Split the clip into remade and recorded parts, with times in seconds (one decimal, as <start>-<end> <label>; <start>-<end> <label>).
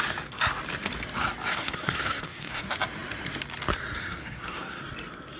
0.0-1.5 recorded; 1.5-2.6 remade; 2.6-4.0 recorded; 4.0-4.8 remade; 4.8-5.4 recorded